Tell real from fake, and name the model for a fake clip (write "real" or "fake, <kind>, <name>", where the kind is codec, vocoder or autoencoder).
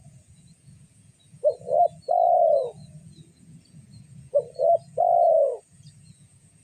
fake, vocoder, Vocos